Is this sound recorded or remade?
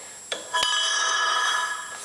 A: recorded